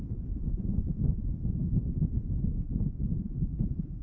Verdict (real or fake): real